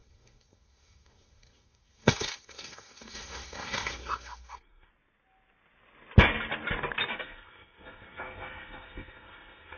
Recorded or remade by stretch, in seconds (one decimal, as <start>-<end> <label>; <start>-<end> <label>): 0.0-4.9 remade; 4.9-7.1 recorded; 7.1-9.8 remade

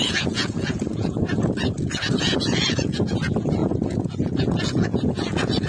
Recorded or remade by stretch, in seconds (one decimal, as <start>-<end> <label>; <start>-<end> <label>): 0.0-5.7 remade

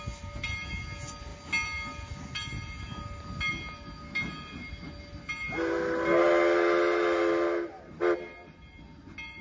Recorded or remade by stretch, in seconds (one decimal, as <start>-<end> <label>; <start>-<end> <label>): 0.0-9.4 recorded